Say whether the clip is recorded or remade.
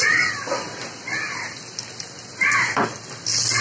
recorded